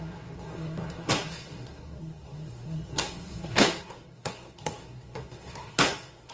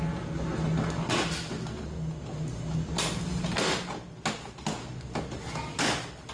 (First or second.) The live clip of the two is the second